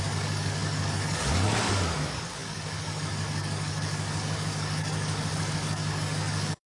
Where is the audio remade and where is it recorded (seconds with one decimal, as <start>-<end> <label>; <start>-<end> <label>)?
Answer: 0.0-6.7 remade